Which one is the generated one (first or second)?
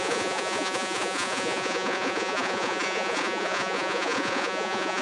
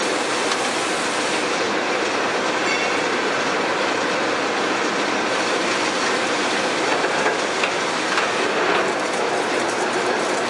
first